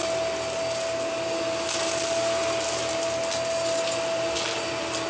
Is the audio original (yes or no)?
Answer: yes